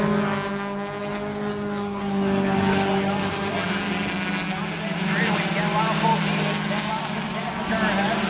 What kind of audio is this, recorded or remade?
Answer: recorded